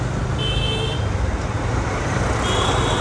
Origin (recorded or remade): recorded